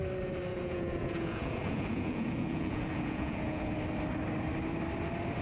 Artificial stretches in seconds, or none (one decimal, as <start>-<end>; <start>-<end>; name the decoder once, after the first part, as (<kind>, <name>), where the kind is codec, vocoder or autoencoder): 0.5-3.7 (vocoder, Vocos)